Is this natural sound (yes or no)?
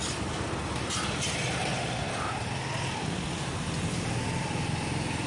yes